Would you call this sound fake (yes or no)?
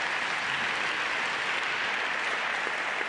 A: no